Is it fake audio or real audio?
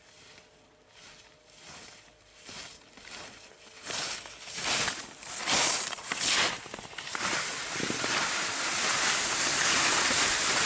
real